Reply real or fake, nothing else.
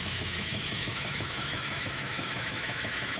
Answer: fake